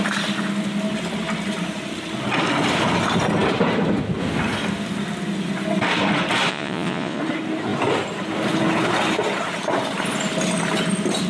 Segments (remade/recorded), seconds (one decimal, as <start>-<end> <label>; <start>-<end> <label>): 0.0-6.5 recorded; 6.5-7.2 remade; 7.2-11.3 recorded

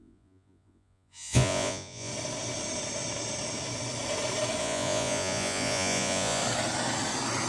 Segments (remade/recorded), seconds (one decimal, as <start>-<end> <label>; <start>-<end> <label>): 0.0-2.1 remade; 2.1-4.6 recorded; 4.6-6.4 remade; 6.4-7.5 recorded